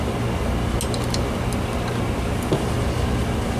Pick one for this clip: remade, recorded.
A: recorded